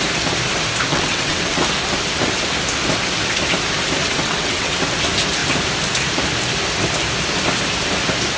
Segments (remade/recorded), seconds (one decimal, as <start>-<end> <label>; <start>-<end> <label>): 0.0-0.9 recorded; 0.9-1.6 remade; 1.6-4.0 recorded; 4.0-4.8 remade; 4.8-8.4 recorded